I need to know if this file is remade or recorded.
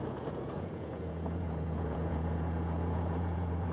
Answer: remade